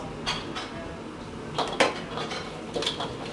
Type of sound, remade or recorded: recorded